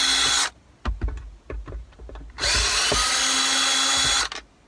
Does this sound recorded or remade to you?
recorded